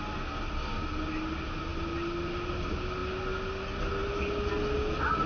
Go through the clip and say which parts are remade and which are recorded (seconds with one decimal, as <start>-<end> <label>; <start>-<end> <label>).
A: 0.0-5.3 recorded